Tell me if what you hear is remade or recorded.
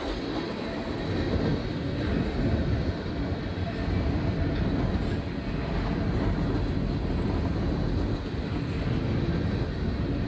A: recorded